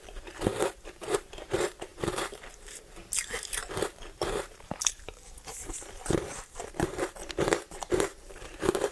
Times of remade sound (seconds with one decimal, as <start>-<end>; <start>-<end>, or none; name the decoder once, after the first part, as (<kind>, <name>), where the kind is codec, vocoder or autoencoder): 0.0-8.9 (vocoder, BigVGAN v2)